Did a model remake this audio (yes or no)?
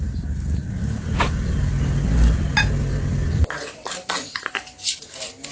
no